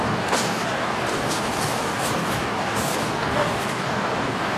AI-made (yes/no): yes